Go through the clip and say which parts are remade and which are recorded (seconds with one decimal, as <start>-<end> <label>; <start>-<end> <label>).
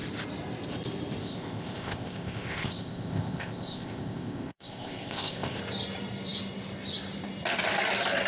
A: 0.0-1.2 recorded; 1.2-5.6 remade; 5.6-8.3 recorded